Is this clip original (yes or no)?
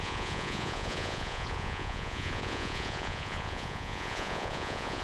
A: no